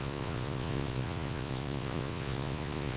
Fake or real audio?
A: fake